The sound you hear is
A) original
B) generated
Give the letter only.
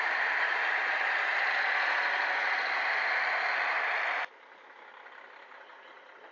B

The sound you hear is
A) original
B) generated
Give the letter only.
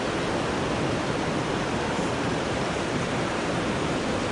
A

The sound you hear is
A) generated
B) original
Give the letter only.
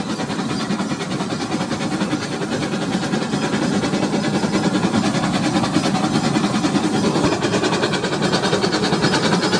B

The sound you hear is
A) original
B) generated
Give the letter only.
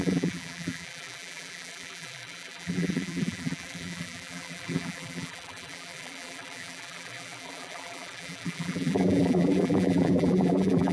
B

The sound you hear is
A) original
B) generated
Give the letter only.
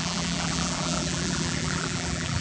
B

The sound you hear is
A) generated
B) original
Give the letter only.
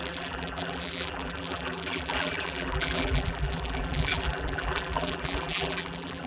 A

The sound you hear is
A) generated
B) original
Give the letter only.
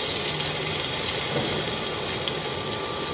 B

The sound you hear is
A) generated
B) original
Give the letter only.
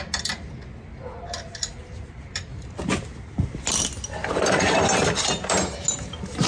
B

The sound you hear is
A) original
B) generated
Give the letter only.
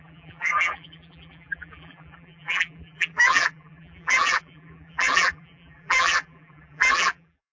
B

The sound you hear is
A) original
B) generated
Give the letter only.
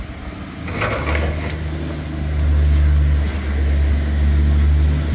A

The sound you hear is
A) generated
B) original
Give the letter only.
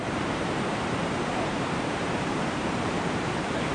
A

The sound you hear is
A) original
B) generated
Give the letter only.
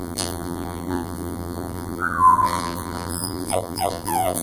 B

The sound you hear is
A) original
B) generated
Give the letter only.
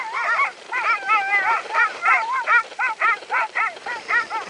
B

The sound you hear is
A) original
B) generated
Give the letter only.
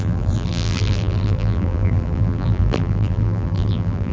B